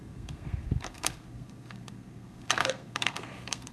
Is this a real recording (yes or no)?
no